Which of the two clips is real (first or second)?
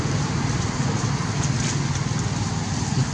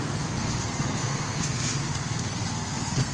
first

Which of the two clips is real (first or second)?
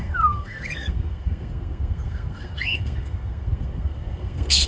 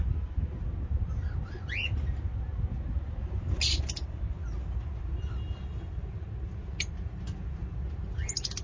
second